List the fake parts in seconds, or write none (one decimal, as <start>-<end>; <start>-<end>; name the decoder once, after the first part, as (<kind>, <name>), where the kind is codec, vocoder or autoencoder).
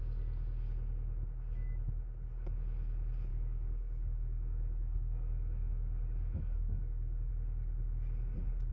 3.3-7.3 (codec, DAC)